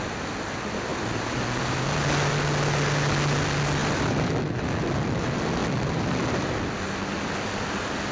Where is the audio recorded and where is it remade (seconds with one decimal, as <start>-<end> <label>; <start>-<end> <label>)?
0.0-3.8 recorded; 3.8-4.3 remade; 4.3-5.6 recorded; 5.6-6.7 remade; 6.7-8.1 recorded